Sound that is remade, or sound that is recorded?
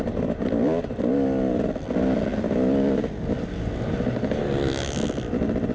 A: recorded